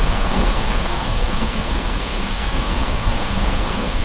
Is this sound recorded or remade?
remade